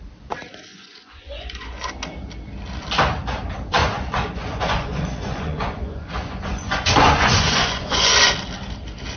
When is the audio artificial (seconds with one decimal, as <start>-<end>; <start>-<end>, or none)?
0.7-1.9; 3.8-8.3